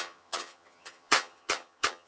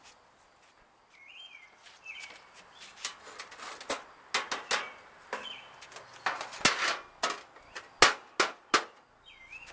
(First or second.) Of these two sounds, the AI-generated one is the first